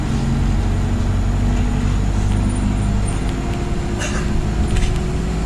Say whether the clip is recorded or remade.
recorded